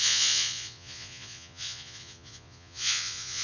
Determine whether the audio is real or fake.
fake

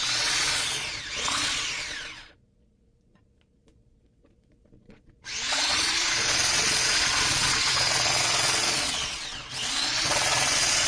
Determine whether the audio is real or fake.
fake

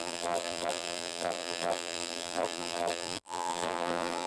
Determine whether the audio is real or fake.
fake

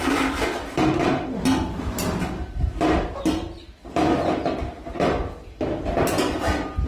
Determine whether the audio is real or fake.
real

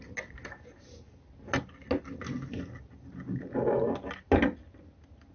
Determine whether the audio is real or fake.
real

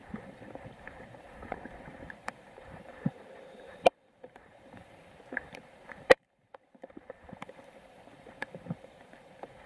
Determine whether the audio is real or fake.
fake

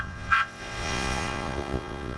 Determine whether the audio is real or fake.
fake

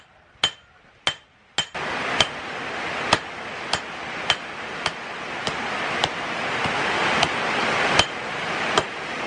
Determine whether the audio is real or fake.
real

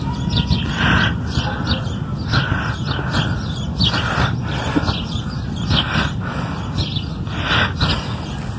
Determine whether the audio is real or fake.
real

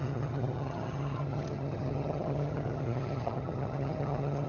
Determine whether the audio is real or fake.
fake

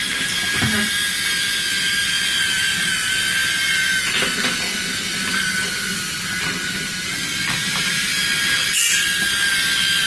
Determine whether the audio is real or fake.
real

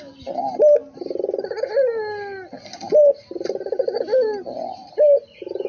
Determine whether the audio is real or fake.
real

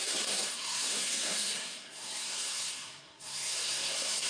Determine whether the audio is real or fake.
fake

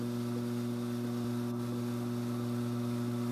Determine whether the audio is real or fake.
real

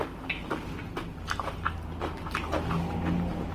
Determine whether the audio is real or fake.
real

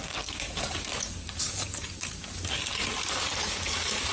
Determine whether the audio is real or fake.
fake